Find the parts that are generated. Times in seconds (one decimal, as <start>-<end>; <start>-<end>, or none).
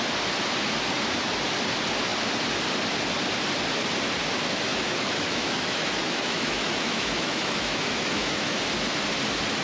4.7-8.6